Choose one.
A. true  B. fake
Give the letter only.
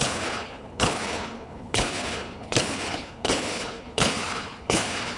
B